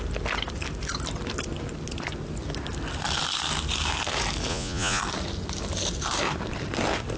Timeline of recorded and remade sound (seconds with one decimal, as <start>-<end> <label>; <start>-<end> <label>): 0.0-4.5 recorded; 4.5-5.0 remade; 5.0-7.2 recorded